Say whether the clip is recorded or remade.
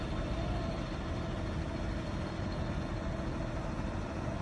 recorded